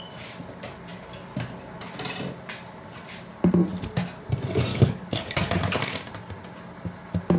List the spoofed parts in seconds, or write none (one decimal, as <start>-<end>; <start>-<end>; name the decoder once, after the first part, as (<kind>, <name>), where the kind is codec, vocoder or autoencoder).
4.7-5.5 (codec, DAC)